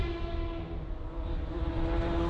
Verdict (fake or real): real